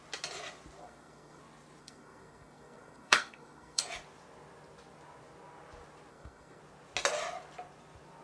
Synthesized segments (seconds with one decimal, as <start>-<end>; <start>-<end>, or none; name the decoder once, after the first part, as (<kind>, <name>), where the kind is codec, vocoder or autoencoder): 0.8-1.4 (codec, SNAC); 1.8-3.8; 6.1-6.6